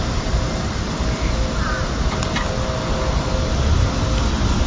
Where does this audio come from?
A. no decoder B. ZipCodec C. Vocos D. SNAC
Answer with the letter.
A